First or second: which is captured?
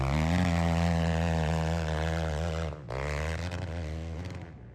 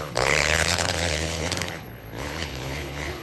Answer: first